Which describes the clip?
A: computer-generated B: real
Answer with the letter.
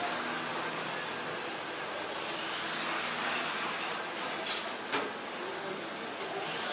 B